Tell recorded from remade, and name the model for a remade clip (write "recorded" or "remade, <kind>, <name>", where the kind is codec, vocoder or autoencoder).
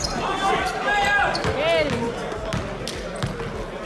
recorded